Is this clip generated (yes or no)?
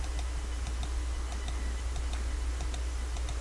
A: no